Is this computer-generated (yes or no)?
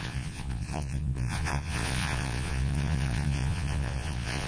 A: yes